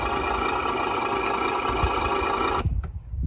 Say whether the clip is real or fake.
real